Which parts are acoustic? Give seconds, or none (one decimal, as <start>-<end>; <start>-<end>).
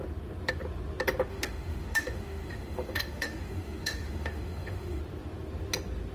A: 0.0-1.3; 5.0-6.1